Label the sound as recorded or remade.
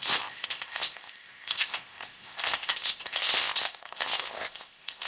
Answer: remade